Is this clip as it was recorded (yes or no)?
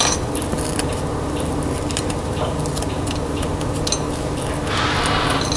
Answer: yes